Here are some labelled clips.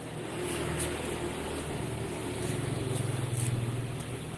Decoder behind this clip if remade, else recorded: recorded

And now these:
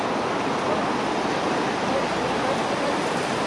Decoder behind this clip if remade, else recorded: recorded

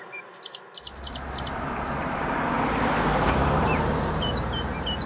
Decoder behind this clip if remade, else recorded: remade, vocoder, BigVGAN v2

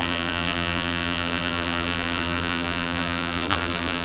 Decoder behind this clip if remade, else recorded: remade, vocoder, BigVGAN v2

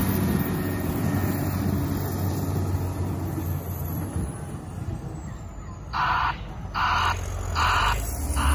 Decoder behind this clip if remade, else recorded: recorded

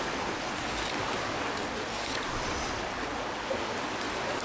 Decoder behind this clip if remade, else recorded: recorded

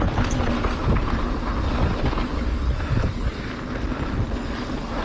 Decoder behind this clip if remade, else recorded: recorded